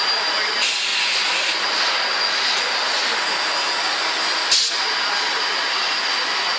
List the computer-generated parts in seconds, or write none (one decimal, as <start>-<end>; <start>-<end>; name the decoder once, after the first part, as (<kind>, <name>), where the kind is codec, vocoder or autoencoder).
none